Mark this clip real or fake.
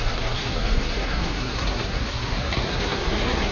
fake